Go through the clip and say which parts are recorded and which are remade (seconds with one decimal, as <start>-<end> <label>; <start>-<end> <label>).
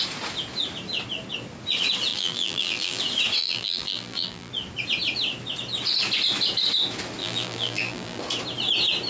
0.0-2.1 recorded; 2.1-3.0 remade; 3.0-3.4 recorded; 3.4-4.5 remade; 4.5-7.2 recorded; 7.2-8.2 remade; 8.2-9.1 recorded